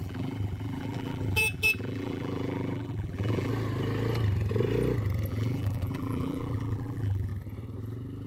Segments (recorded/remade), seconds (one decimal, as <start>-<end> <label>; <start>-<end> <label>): 0.0-3.5 remade; 3.5-5.3 recorded; 5.3-7.3 remade; 7.3-8.3 recorded

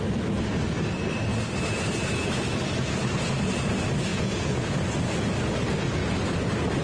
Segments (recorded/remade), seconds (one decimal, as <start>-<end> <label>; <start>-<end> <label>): 0.0-4.1 recorded; 4.1-4.8 remade; 4.8-6.8 recorded